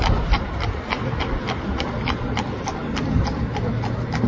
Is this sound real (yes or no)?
yes